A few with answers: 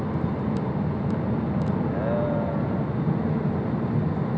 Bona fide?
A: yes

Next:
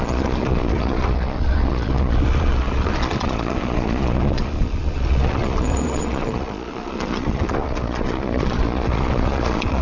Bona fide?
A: no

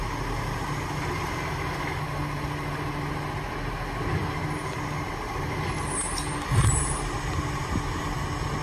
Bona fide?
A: yes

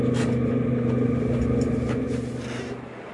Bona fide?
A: yes